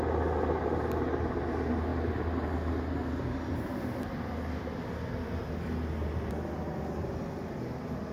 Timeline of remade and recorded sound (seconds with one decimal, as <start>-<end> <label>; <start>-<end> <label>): 0.0-8.1 recorded